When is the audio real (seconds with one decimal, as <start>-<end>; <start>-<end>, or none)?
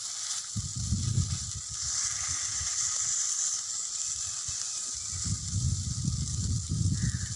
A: 0.0-7.4